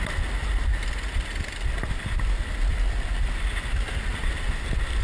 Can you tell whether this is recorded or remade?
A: recorded